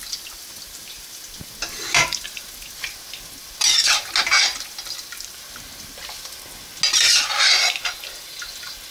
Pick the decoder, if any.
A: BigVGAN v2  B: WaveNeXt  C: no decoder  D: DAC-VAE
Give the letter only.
C